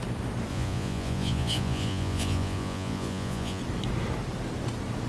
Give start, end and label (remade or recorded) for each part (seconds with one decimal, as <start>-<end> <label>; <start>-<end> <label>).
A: 0.0-0.5 recorded; 0.5-3.6 remade; 3.6-5.1 recorded